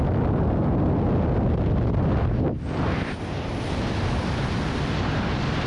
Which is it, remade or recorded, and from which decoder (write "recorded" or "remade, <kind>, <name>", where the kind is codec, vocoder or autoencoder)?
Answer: recorded